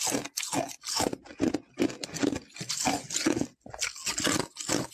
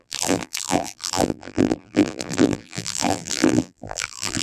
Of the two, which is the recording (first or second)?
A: first